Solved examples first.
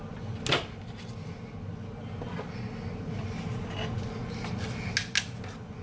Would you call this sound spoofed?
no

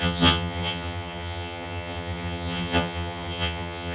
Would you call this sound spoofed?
yes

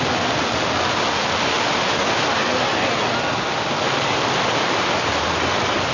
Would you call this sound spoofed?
no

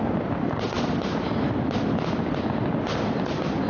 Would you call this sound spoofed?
no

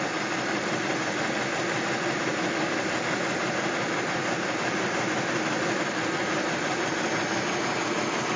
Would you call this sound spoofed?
no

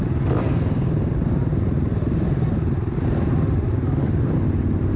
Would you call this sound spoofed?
no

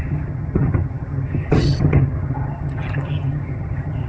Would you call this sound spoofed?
yes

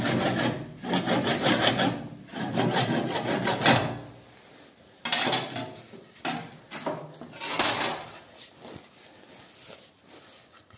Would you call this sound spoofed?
no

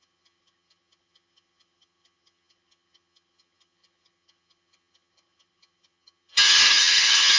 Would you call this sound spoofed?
yes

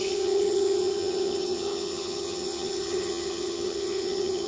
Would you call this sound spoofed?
yes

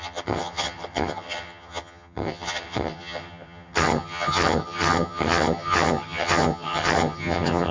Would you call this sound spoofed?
yes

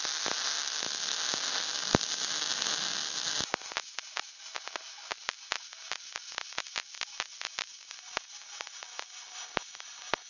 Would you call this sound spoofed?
no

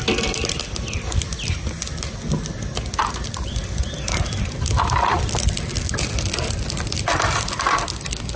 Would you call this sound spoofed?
no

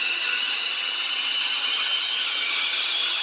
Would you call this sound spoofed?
yes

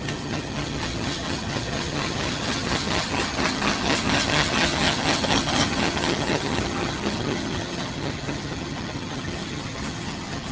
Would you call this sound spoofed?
yes